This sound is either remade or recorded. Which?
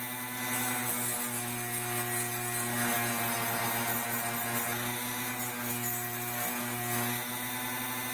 recorded